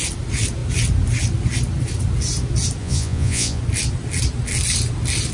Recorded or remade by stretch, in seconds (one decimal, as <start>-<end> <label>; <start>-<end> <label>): 0.0-2.8 recorded; 2.8-3.6 remade; 3.6-5.3 recorded